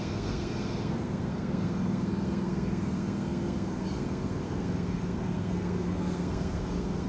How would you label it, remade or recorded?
remade